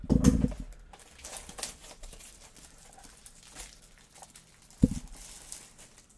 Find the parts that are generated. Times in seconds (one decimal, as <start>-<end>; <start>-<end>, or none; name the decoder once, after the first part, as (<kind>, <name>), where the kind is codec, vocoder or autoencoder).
1.8-3.4 (vocoder, BigVGAN v2)